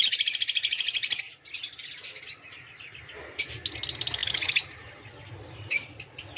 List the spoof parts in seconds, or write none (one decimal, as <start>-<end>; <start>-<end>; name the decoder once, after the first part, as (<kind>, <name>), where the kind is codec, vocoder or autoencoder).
none